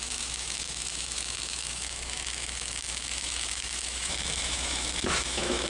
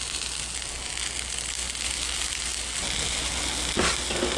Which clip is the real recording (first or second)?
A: second